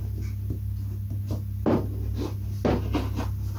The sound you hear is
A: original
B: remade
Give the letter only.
A